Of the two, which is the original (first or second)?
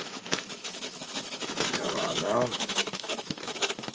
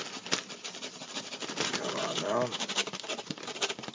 second